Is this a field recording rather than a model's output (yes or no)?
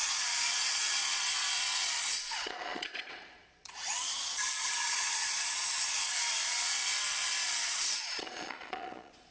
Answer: no